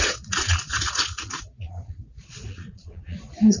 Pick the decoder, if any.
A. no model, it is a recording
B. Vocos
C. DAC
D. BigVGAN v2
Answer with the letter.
B